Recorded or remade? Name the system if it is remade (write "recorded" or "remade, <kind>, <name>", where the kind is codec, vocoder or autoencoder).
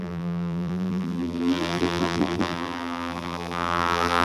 remade, vocoder, BigVGAN v2